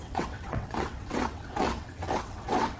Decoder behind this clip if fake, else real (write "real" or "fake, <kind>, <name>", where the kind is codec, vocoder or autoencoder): fake, vocoder, WaveNeXt